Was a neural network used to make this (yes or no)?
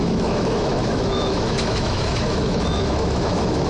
yes